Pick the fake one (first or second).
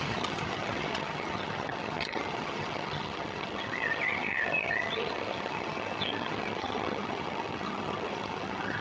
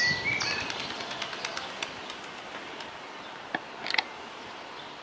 first